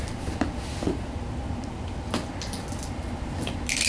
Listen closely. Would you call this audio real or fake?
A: real